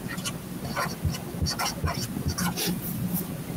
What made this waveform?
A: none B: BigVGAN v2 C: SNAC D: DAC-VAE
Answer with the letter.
A